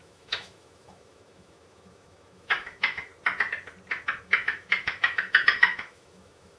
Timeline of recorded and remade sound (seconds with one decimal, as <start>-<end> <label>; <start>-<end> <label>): 0.0-3.1 remade; 3.1-4.2 recorded; 4.2-6.6 remade